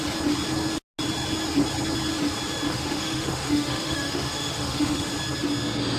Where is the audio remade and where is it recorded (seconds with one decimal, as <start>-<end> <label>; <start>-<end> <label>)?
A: 0.0-2.7 recorded; 2.7-5.1 remade; 5.1-6.0 recorded